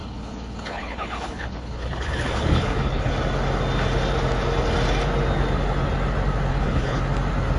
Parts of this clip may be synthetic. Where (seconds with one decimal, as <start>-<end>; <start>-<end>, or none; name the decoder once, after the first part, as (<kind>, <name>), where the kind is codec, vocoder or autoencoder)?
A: 0.0-3.1 (codec, HILCodec); 6.5-7.0